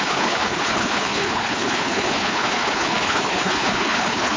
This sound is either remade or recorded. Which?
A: remade